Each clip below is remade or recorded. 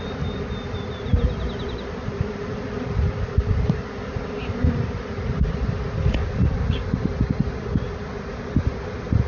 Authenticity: recorded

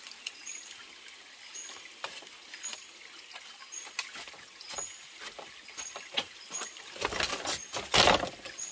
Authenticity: recorded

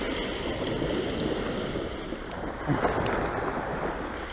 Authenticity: recorded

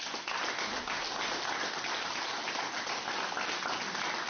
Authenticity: recorded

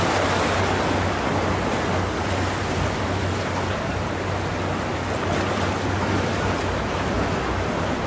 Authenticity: recorded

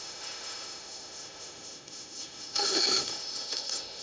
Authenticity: remade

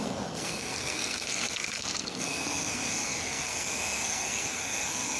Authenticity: remade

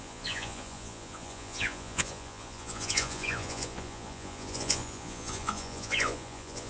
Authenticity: remade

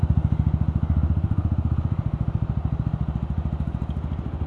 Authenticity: recorded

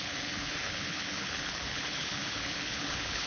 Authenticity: remade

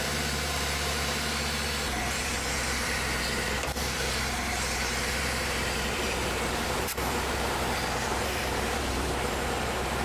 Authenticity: remade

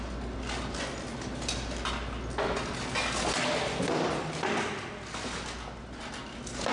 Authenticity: recorded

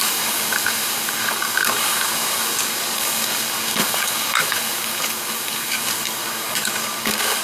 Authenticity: remade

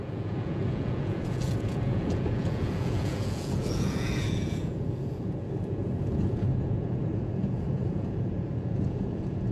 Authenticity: remade